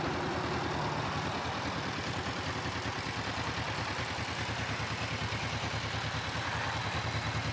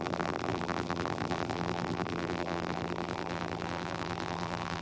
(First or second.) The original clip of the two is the first